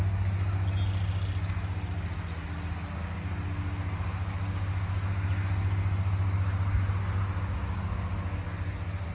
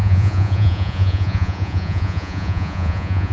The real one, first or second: first